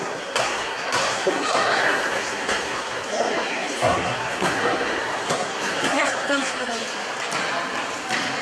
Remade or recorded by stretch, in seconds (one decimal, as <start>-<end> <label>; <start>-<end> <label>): 0.0-6.8 remade; 6.8-8.4 recorded